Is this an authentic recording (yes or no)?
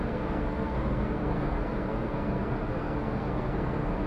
no